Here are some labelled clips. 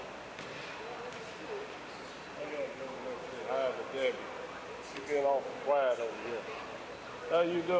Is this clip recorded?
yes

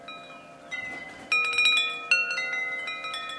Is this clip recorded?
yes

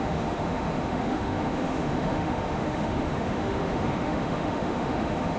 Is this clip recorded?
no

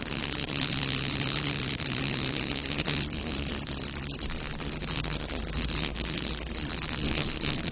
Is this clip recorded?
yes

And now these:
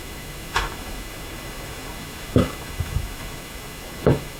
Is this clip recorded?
no